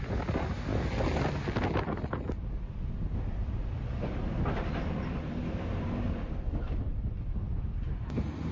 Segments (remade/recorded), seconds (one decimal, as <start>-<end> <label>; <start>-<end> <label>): 0.0-3.4 recorded; 3.4-5.3 remade; 5.3-5.7 recorded; 5.7-7.7 remade; 7.7-8.5 recorded